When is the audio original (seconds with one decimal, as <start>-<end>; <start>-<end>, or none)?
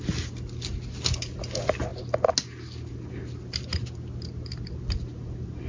0.0-5.7